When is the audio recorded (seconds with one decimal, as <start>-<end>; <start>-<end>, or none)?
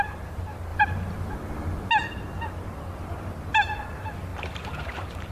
0.0-4.3